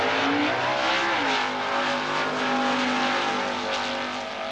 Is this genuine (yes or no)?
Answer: yes